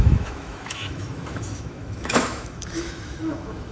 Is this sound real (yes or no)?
no